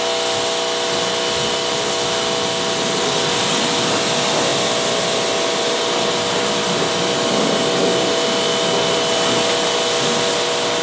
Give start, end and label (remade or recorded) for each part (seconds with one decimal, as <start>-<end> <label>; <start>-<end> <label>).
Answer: 0.0-10.8 recorded